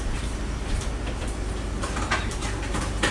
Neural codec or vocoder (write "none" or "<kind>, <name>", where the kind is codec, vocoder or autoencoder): vocoder, BigVGAN v2